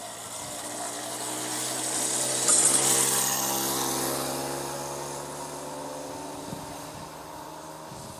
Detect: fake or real real